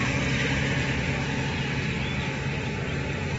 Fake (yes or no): no